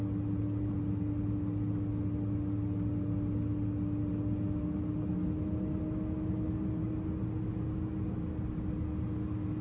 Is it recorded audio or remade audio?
recorded